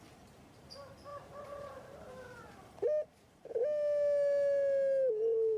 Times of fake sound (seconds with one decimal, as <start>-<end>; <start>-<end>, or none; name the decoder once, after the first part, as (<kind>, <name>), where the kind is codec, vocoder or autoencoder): 1.1-3.5 (vocoder, BigVGAN v2)